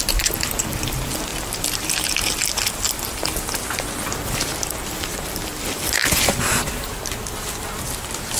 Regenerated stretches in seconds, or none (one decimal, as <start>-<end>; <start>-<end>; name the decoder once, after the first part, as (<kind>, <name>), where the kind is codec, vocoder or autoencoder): none